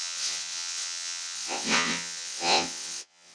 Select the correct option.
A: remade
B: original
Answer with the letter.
A